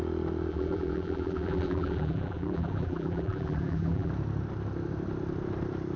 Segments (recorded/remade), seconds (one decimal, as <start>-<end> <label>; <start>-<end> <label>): 0.0-0.5 recorded; 0.5-4.1 remade; 4.1-6.0 recorded